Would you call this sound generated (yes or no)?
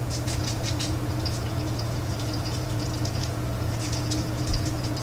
yes